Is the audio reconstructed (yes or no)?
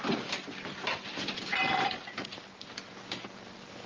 no